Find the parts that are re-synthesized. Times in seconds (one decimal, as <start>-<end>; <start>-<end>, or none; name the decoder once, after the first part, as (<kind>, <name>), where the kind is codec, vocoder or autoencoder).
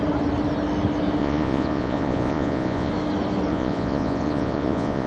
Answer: 1.2-2.9 (vocoder, Vocos); 3.5-5.1